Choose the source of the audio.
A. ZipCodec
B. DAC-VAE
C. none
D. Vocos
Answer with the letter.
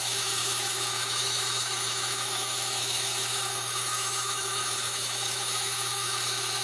B